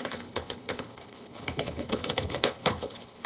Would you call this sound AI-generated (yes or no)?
yes